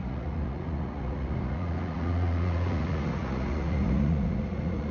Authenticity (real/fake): fake